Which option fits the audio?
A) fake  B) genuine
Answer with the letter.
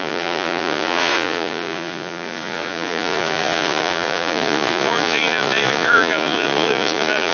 A